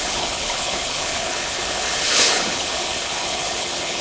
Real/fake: fake